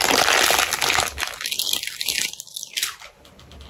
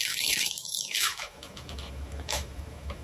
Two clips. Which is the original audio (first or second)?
first